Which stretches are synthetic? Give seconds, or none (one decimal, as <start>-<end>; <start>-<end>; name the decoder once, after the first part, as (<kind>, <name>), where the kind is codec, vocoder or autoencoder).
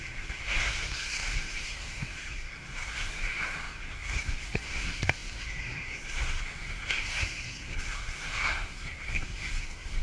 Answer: 0.0-10.0 (codec, SNAC)